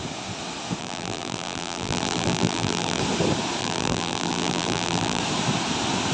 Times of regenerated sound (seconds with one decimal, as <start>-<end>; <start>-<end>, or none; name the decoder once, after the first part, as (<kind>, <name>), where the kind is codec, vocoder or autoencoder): 0.8-3.0 (vocoder, BigVGAN v2); 3.6-5.2